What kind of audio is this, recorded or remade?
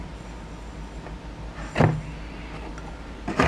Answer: recorded